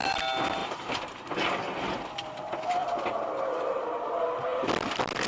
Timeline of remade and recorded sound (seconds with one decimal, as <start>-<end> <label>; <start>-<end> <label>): 0.0-0.6 recorded; 0.6-1.2 remade; 1.2-2.8 recorded; 2.8-4.1 remade; 4.1-5.3 recorded